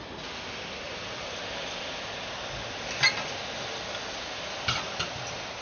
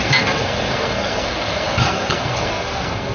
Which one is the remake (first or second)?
second